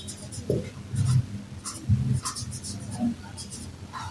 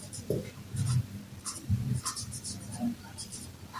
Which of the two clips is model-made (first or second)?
second